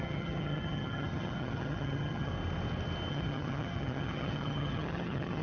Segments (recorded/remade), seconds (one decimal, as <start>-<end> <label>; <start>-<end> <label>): 0.0-2.3 remade; 2.3-3.1 recorded; 3.1-5.4 remade